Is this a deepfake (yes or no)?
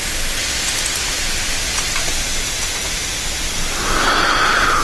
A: no